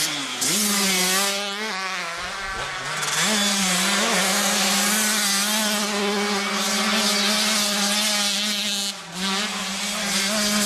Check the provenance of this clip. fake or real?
real